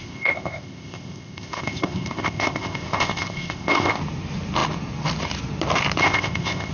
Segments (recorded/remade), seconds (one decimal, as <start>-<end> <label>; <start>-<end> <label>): 0.0-4.0 remade; 4.0-6.0 recorded; 6.0-6.7 remade